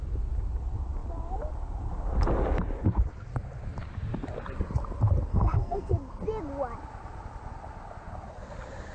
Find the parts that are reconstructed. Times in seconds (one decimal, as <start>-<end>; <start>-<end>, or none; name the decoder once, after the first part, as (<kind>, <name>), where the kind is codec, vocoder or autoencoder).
5.3-5.9 (codec, SNAC)